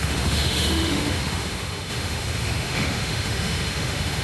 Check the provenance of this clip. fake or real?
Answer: fake